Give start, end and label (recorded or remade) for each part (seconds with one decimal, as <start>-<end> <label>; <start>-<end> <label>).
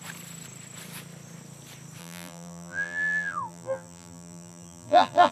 0.0-2.0 recorded; 2.0-5.3 remade